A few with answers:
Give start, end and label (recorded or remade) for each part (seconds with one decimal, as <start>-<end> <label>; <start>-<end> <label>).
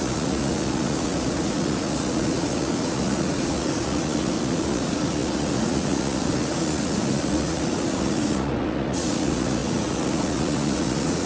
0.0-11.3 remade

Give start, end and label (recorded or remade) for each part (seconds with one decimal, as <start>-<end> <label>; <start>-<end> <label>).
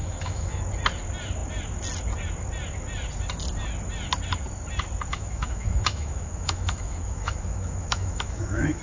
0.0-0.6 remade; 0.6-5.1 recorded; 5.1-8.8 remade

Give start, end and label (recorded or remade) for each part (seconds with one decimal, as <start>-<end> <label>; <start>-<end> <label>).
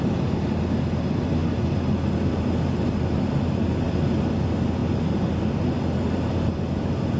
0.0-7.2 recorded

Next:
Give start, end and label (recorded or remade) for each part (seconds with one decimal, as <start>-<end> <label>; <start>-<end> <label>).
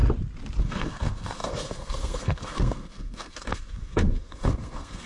0.0-0.6 recorded; 0.6-5.1 remade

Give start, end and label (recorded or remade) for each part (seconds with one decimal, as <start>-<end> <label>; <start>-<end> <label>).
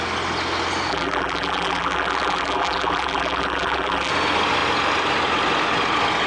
0.0-0.9 recorded; 0.9-4.1 remade; 4.1-6.3 recorded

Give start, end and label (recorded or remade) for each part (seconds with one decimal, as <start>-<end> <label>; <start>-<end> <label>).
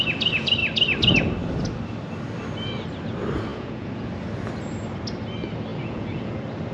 0.0-3.5 recorded; 3.5-4.1 remade; 4.1-5.7 recorded; 5.7-6.3 remade; 6.3-6.7 recorded